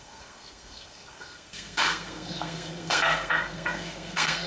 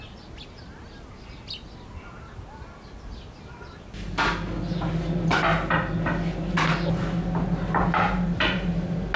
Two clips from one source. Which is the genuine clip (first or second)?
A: second